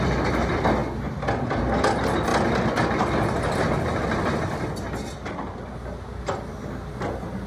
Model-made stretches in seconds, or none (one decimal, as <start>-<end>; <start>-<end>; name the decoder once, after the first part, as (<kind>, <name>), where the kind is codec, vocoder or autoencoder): none